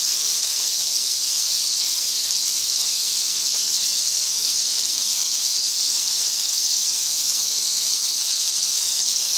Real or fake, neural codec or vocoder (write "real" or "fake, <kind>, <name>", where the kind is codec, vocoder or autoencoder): fake, codec, SNAC